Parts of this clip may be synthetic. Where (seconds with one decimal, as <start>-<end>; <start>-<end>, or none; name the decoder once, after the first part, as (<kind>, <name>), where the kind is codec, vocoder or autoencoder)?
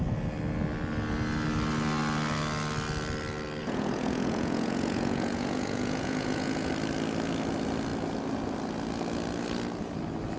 3.6-6.7 (vocoder, Vocos)